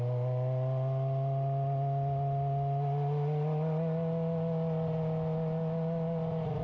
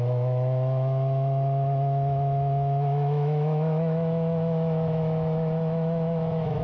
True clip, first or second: first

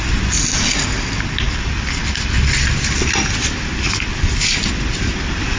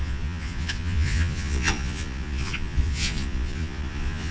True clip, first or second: first